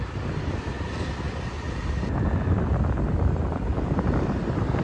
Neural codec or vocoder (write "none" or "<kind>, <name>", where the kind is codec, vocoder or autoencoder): none